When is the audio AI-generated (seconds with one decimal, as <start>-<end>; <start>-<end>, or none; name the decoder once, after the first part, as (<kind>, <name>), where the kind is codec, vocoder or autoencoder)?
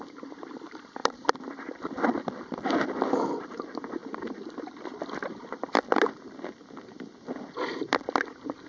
1.0-1.6 (vocoder, BigVGAN v2); 4.0-6.4